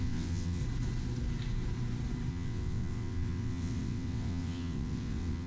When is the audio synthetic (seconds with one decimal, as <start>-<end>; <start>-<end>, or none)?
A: 0.0-0.6; 2.3-5.5